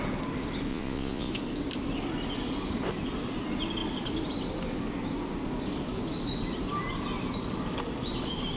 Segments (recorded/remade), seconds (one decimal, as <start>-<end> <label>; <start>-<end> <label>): 0.0-0.7 recorded; 0.7-1.3 remade; 1.3-8.6 recorded